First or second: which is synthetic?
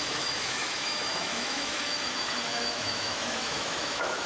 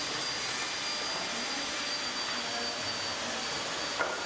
first